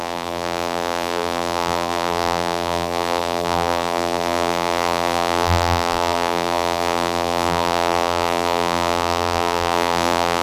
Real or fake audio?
fake